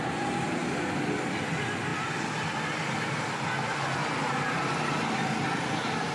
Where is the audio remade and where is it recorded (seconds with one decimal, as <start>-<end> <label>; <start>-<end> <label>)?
0.0-6.1 recorded